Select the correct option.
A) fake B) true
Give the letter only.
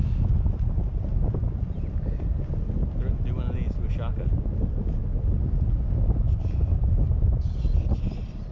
B